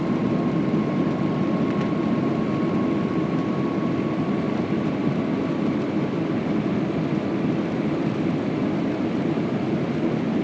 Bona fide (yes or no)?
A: yes